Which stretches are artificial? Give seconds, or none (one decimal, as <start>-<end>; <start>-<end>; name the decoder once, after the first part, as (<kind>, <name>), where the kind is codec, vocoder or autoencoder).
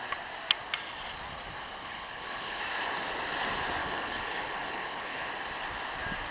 1.8-2.6 (codec, HILCodec); 3.8-5.3